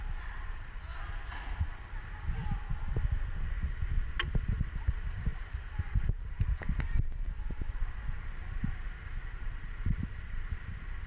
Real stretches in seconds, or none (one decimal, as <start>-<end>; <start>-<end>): 0.0-11.1